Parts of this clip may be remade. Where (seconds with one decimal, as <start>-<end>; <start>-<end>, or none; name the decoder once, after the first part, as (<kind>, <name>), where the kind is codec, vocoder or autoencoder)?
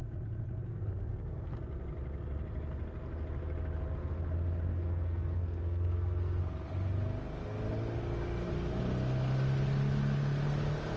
0.7-1.5 (codec, SNAC); 4.7-6.4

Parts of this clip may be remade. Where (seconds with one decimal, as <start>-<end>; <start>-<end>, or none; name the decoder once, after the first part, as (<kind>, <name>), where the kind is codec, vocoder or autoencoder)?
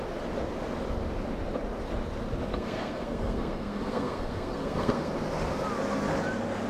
2.5-5.1 (codec, SNAC)